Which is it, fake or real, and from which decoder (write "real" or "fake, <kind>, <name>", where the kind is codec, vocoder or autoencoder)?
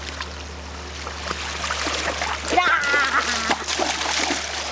real